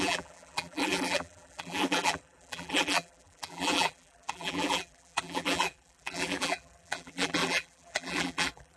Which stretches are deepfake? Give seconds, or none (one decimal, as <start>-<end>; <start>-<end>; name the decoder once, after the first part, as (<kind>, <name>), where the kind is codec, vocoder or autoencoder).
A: 0.0-8.8 (vocoder, BigVGAN v2)